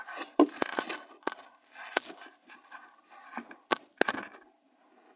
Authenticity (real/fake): real